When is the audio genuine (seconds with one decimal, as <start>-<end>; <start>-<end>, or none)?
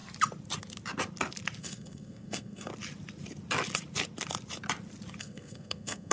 0.0-1.6; 2.7-5.2